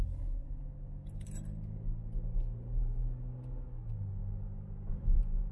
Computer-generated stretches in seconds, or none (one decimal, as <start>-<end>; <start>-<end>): none